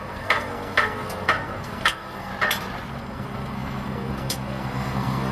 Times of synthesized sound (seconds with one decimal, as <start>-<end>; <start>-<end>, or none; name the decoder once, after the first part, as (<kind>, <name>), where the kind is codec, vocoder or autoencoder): 0.0-2.3 (codec, SNAC); 2.9-5.3